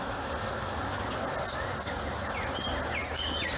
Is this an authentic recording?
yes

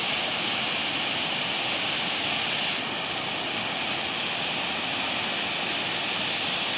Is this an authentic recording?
yes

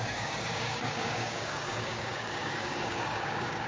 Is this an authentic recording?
no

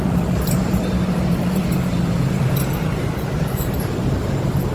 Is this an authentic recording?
no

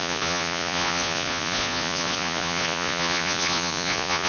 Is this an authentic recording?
no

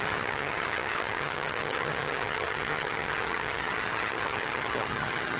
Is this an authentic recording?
no